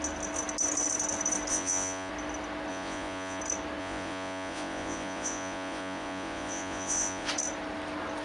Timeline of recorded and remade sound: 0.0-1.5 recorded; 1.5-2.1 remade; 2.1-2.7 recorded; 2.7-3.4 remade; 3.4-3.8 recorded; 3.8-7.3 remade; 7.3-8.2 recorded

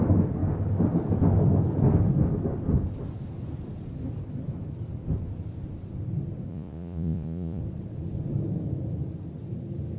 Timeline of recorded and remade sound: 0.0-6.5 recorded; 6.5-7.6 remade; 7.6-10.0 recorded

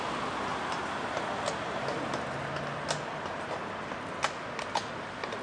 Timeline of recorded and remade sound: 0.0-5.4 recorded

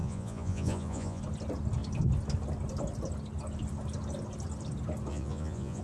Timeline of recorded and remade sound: 0.0-1.2 remade; 1.2-5.1 recorded; 5.1-5.8 remade

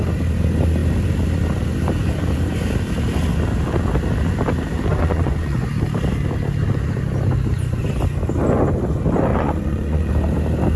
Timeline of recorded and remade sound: 0.0-4.9 recorded; 4.9-5.7 remade; 5.7-9.3 recorded; 9.3-10.1 remade; 10.1-10.8 recorded

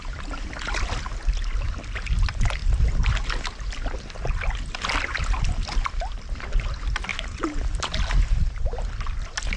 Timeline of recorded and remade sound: 0.0-9.6 recorded

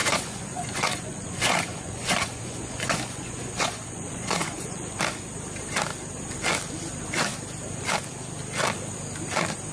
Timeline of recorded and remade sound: 0.0-4.9 remade; 4.9-9.7 recorded